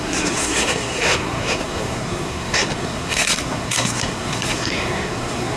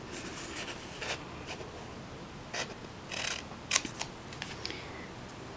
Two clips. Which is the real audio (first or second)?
second